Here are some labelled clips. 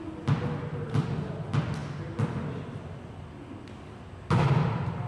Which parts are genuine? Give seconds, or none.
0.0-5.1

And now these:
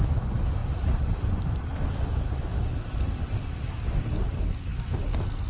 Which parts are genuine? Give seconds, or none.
0.0-5.5

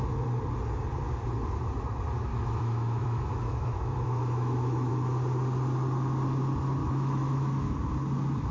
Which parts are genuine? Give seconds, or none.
0.0-2.3; 4.9-6.8; 7.9-8.5

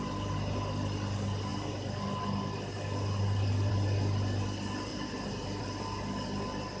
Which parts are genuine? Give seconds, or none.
0.0-4.9; 5.6-6.8

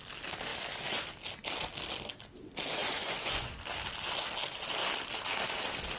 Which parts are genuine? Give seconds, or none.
0.0-2.8; 3.5-6.0

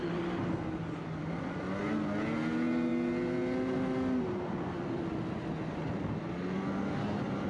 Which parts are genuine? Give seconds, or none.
0.0-7.5

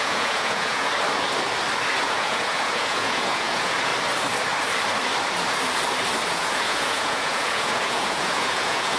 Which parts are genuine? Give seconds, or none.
0.9-2.0; 3.9-6.3

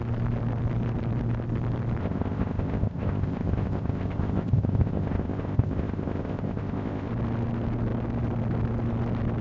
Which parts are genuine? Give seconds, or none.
0.0-2.0; 7.1-9.4